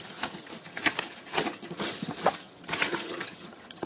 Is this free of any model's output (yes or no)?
no